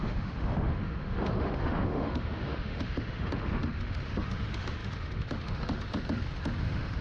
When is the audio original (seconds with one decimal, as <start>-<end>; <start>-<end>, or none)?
none